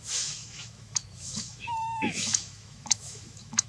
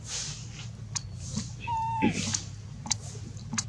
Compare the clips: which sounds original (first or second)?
second